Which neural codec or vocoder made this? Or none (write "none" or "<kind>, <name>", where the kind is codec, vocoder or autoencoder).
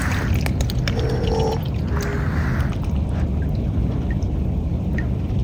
none